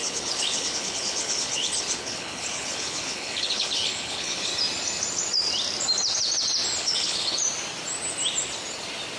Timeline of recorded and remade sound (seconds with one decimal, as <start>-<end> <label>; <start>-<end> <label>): 0.0-4.5 remade; 4.5-6.8 recorded; 6.8-7.4 remade; 7.4-9.2 recorded